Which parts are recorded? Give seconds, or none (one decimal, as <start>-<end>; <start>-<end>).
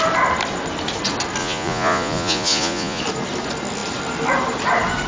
0.0-1.4; 3.0-5.1